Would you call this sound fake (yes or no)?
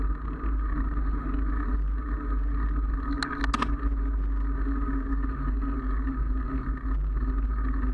no